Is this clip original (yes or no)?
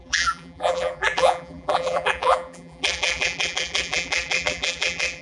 no